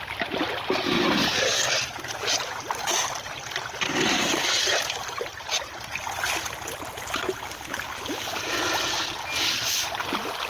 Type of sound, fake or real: real